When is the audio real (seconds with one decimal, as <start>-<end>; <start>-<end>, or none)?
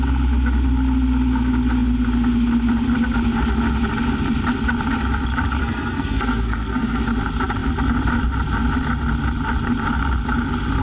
0.0-5.6; 7.0-10.8